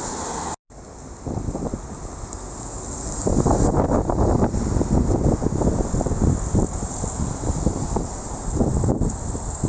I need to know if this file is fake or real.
real